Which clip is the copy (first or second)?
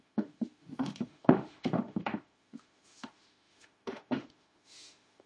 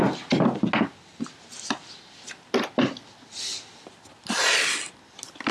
first